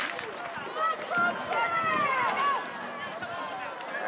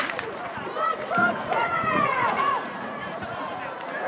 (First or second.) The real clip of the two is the first